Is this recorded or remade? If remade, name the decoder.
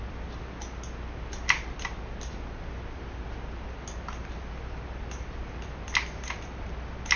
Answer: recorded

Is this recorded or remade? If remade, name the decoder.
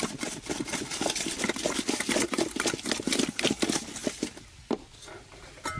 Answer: recorded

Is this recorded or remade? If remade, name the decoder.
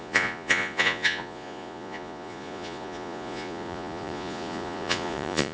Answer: remade, vocoder, Vocos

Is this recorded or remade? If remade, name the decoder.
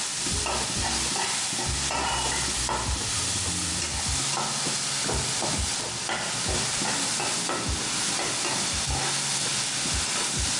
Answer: recorded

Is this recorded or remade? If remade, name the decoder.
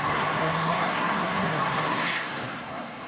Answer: remade, codec, SNAC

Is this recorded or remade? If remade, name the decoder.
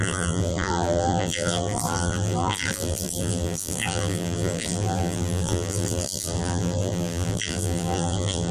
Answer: remade, vocoder, BigVGAN v2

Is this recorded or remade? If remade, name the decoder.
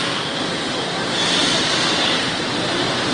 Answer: recorded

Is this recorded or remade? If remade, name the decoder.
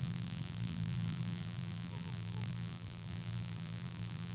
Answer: remade, vocoder, BigVGAN v2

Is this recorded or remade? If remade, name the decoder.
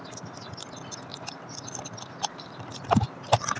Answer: recorded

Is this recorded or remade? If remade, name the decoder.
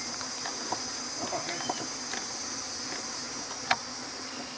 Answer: recorded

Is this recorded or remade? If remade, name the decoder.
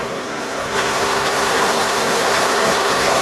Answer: remade, codec, SNAC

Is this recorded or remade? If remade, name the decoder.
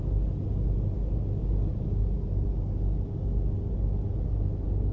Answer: recorded